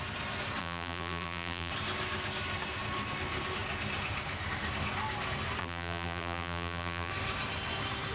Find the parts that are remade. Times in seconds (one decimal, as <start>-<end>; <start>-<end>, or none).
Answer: 0.6-1.7; 5.6-7.1